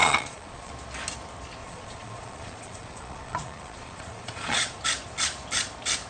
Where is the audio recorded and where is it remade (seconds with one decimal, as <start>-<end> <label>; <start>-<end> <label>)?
0.0-0.7 remade; 0.7-1.6 recorded; 1.6-4.8 remade; 4.8-6.1 recorded